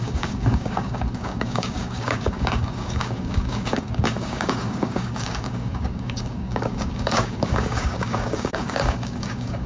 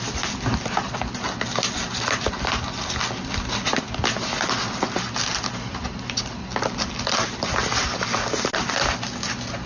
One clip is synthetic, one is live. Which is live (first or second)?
second